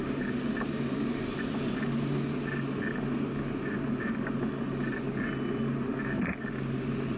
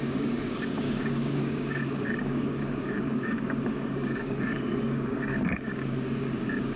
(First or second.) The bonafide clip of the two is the first